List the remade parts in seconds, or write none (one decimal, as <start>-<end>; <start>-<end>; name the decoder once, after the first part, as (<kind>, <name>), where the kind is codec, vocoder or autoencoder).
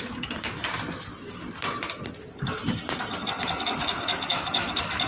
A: 4.3-5.1 (autoencoder, DAC-VAE)